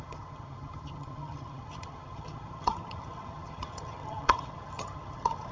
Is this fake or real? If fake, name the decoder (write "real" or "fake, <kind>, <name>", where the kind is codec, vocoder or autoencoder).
fake, vocoder, HiFi-GAN